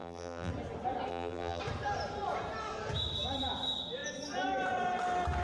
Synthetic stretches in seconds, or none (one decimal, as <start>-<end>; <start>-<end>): 0.0-0.5; 1.1-1.6